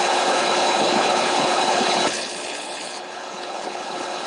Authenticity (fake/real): fake